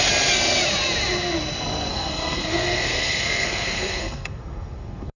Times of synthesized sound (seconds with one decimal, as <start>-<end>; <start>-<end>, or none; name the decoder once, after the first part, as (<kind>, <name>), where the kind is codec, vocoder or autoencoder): 1.9-5.2 (codec, SNAC)